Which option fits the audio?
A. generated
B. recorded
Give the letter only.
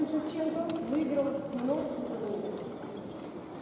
B